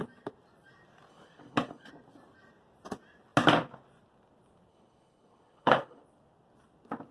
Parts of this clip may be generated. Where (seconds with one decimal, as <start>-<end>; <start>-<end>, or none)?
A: 1.1-1.9; 4.7-6.0